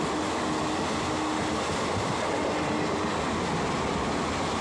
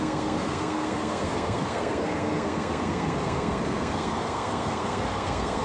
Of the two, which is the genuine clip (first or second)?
first